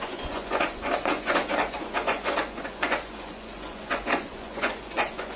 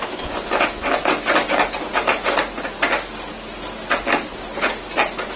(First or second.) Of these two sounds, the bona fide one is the second